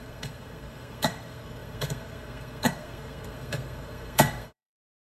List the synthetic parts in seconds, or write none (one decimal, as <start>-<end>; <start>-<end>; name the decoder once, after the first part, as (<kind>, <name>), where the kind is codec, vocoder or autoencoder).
0.0-5.0 (codec, SNAC)